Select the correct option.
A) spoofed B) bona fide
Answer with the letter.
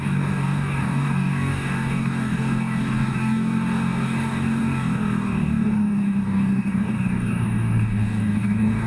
A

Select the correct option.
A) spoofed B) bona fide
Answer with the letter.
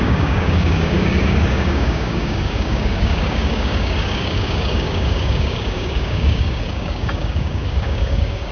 A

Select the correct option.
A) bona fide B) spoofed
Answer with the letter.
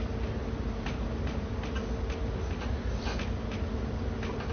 A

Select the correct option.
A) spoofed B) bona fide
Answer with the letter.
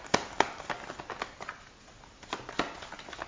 B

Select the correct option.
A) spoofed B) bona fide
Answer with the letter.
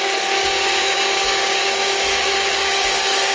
A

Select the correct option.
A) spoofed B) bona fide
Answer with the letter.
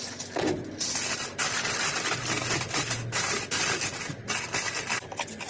B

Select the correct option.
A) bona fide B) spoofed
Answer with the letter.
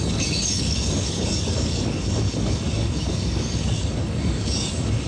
B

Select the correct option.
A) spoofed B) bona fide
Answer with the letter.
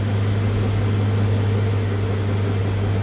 B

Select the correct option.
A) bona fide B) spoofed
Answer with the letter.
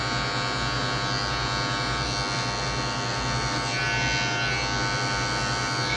A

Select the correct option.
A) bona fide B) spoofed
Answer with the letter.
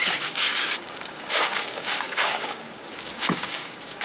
B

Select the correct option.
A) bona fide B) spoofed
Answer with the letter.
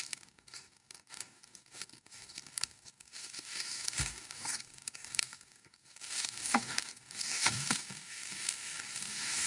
B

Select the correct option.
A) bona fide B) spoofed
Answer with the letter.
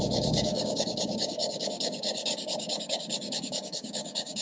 B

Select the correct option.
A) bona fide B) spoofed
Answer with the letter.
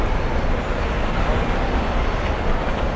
A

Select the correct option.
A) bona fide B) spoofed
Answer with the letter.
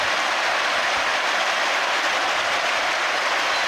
A